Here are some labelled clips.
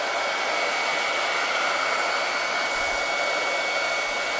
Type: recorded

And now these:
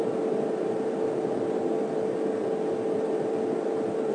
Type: remade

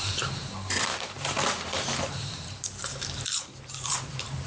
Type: remade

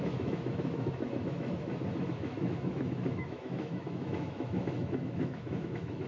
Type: remade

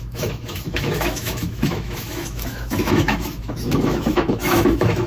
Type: remade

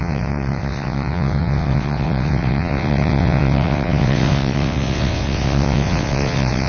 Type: remade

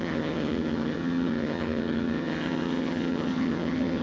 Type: remade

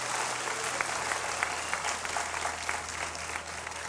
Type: recorded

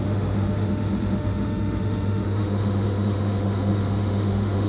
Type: remade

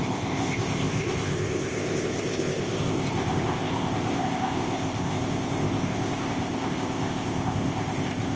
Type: remade